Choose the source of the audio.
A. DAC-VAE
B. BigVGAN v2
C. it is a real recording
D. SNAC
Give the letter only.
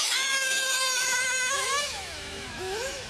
A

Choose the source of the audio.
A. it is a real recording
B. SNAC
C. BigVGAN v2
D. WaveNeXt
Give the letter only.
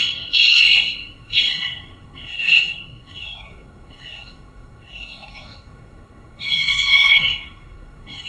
B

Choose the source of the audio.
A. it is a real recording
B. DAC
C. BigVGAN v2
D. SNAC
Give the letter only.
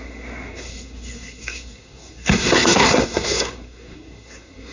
D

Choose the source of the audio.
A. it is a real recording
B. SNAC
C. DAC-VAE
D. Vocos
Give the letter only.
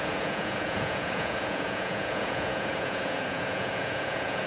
D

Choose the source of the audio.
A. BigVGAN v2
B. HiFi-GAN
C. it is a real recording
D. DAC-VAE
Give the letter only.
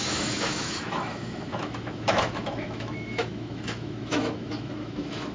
D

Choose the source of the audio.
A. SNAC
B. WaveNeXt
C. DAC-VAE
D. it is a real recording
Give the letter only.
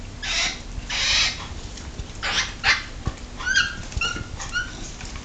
D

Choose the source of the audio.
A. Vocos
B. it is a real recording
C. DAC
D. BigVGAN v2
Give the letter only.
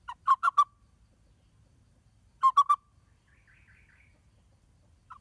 B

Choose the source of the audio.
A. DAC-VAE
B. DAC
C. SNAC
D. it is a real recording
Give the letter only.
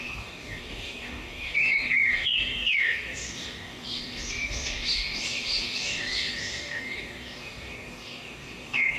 B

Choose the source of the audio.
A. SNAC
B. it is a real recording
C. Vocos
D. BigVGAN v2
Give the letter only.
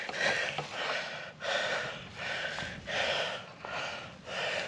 B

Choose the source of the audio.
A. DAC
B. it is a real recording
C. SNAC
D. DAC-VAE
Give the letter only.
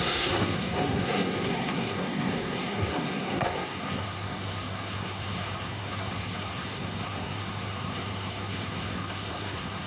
C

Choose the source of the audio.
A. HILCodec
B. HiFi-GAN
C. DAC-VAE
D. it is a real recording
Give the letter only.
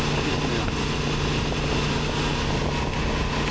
D